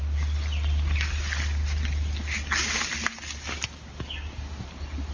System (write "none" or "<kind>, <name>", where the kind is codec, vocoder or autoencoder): none